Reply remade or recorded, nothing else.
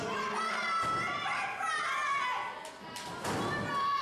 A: recorded